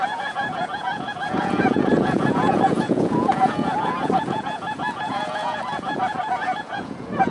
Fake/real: fake